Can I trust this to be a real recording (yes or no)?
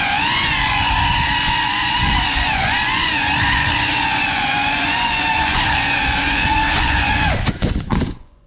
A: no